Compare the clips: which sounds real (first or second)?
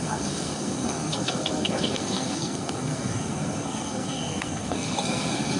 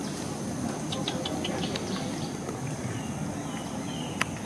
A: second